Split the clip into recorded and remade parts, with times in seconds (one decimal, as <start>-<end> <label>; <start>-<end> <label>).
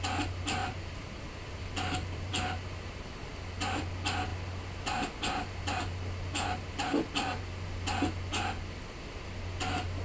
0.0-0.6 recorded; 0.6-2.3 remade; 2.3-10.0 recorded